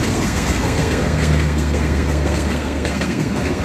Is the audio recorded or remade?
remade